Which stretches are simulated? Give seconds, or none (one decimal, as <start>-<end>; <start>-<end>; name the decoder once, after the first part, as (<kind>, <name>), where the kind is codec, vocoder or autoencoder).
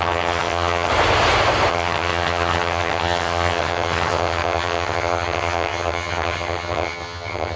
0.0-0.9 (vocoder, HiFi-GAN); 1.7-7.6